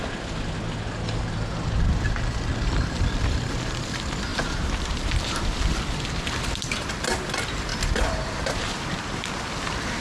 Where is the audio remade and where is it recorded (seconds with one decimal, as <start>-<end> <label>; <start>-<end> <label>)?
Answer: 0.0-4.3 recorded; 4.3-5.8 remade; 5.8-7.7 recorded; 7.7-9.2 remade; 9.2-10.0 recorded